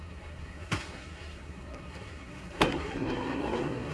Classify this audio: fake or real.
fake